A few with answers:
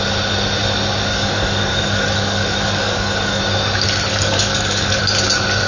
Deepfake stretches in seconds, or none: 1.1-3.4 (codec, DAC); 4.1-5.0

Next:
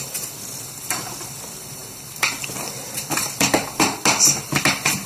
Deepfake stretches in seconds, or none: none

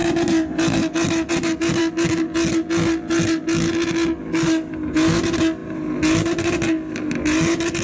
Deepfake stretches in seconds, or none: 4.2-4.7 (codec, DAC)

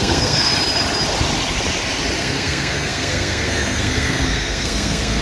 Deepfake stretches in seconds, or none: 0.0-0.5 (codec, SNAC); 2.2-5.2

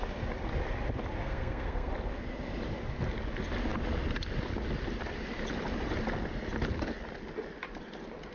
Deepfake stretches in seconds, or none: 1.2-1.9 (codec, SNAC)

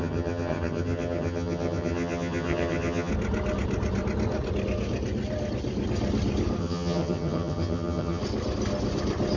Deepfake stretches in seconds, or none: 0.0-3.1 (vocoder, HiFi-GAN); 6.6-8.2

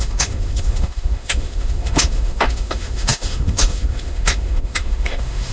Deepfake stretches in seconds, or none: 0.0-5.5 (autoencoder, DAC-VAE)